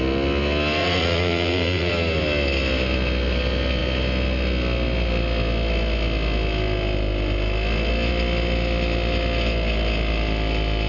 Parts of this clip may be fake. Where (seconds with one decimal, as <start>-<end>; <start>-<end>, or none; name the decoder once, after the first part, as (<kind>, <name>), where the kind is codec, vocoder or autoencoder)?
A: 0.8-1.9 (vocoder, Vocos)